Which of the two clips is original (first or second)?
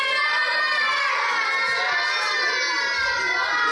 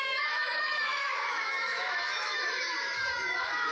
first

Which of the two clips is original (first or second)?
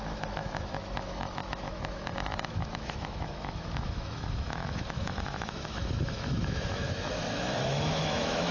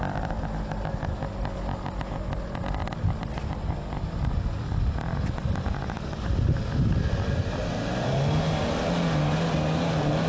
second